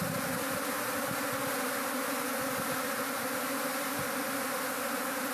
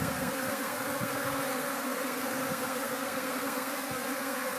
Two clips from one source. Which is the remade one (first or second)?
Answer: second